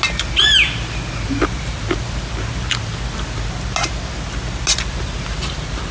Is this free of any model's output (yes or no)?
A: yes